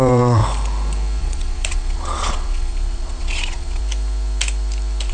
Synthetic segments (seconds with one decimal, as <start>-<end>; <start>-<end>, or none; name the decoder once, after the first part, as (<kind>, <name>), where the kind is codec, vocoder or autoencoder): 0.0-0.4 (vocoder, Vocos); 1.2-3.8